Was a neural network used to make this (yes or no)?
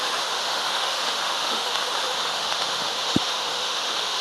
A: yes